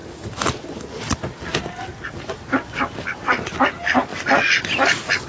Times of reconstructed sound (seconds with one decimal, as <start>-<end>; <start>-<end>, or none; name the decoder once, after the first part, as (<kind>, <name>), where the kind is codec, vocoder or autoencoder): none

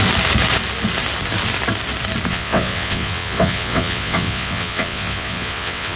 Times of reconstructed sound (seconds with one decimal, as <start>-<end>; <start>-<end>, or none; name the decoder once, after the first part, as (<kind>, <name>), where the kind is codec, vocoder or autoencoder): 2.3-6.0 (vocoder, WaveNeXt)

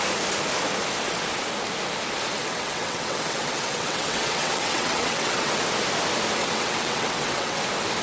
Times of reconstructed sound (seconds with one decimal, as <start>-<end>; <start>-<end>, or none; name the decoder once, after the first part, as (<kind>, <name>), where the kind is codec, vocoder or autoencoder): 2.4-5.6 (vocoder, WaveNeXt); 6.4-7.6

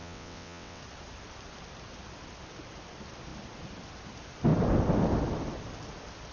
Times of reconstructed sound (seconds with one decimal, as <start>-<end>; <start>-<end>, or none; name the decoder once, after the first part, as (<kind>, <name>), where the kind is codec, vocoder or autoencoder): 0.0-0.8 (vocoder, WaveNeXt)

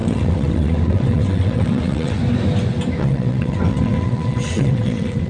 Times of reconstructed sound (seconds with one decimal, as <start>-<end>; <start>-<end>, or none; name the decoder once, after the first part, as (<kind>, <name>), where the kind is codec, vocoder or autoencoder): 0.0-2.2 (vocoder, WaveNeXt); 3.0-5.3

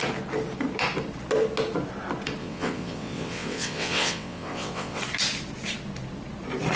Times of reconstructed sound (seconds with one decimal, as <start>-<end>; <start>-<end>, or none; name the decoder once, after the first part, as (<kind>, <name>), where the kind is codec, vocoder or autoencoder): 2.4-5.0 (vocoder, WaveNeXt)